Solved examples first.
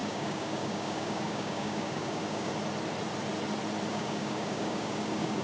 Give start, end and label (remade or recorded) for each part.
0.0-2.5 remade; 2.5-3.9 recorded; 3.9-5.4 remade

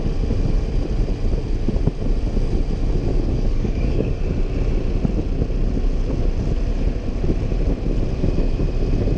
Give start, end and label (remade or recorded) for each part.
0.0-3.1 recorded; 3.1-4.2 remade; 4.2-9.2 recorded